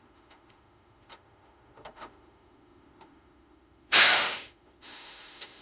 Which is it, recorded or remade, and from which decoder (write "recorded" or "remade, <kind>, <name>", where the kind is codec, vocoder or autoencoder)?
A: remade, autoencoder, DAC-VAE